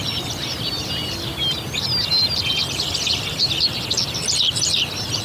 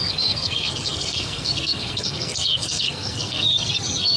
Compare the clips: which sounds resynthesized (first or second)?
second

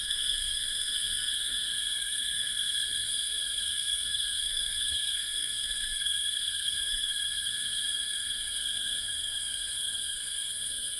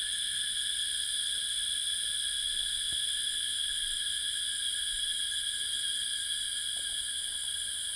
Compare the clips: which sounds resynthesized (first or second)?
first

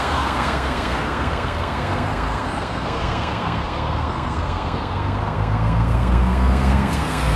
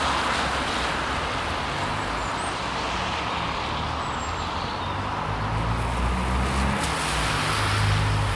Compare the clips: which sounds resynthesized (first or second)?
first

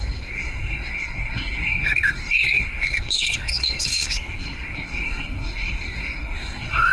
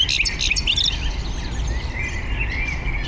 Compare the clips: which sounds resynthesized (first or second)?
first